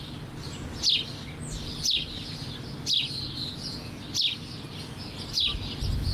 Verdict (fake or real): real